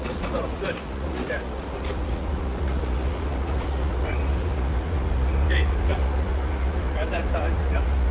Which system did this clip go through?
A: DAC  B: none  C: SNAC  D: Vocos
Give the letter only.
D